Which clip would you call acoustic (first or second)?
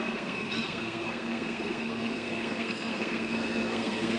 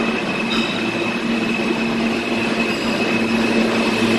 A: second